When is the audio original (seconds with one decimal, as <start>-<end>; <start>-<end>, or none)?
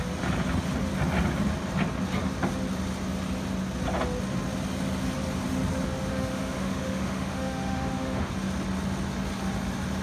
0.0-6.1; 8.3-10.0